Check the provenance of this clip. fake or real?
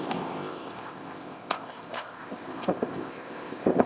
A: fake